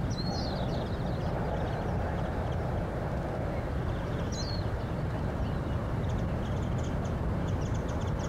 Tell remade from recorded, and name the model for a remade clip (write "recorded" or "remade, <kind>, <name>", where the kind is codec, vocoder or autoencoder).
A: recorded